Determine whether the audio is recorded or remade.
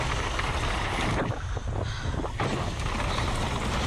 recorded